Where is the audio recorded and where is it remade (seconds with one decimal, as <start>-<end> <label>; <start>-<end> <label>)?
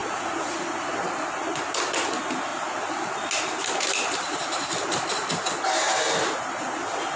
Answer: 0.0-0.9 remade; 0.9-7.2 recorded